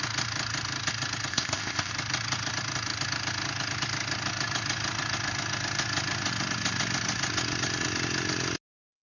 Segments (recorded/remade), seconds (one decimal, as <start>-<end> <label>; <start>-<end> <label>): 0.0-1.3 recorded; 1.3-1.9 remade; 1.9-9.0 recorded